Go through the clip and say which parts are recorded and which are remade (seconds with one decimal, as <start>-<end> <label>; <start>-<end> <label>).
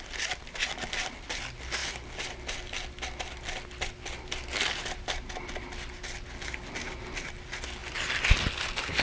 0.0-9.0 recorded